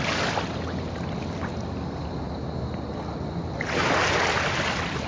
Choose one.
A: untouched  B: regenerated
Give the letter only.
A